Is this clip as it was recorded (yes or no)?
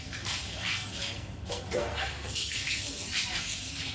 no